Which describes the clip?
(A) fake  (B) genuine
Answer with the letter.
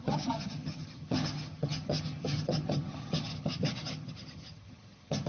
A